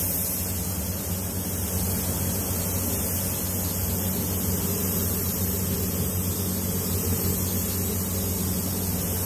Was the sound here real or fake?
real